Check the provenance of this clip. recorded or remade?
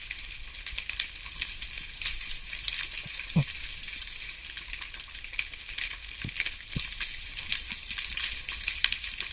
recorded